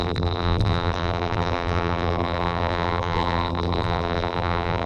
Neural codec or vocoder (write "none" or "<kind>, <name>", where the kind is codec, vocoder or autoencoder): vocoder, BigVGAN v2